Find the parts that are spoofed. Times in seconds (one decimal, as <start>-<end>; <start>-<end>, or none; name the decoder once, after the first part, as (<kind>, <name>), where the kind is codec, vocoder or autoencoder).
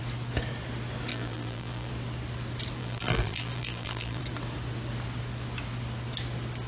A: 1.1-1.9 (vocoder, BigVGAN v2); 2.8-4.2